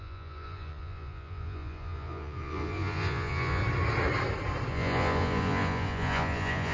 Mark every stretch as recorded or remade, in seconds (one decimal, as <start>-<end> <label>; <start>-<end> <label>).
0.0-3.6 remade; 3.6-4.7 recorded; 4.7-6.7 remade